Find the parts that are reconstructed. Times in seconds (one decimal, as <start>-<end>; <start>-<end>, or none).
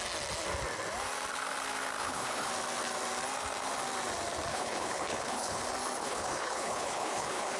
2.0-2.5; 4.5-5.6; 6.0-7.6